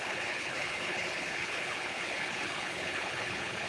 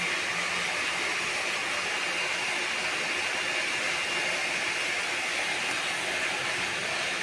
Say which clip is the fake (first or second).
first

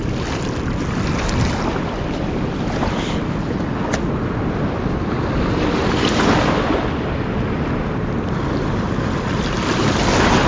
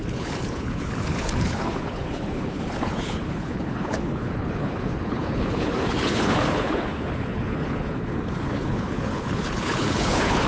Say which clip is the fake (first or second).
second